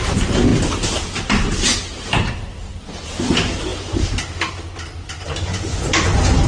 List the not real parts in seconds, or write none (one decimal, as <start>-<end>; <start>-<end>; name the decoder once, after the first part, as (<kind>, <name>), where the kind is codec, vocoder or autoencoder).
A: none